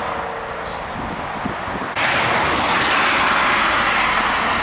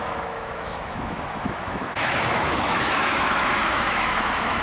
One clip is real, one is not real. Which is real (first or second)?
first